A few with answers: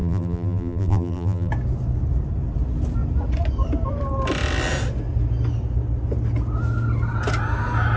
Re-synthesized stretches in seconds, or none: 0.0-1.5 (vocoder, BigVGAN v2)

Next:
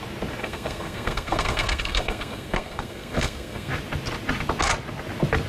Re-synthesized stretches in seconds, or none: 0.4-3.7 (codec, SNAC)

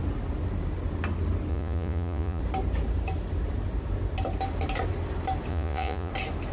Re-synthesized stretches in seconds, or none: 1.5-2.4 (vocoder, Vocos); 5.5-6.1